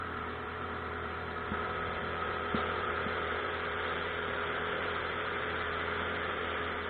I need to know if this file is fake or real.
fake